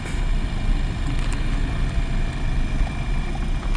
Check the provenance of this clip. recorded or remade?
recorded